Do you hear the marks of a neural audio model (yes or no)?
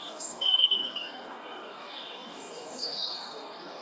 yes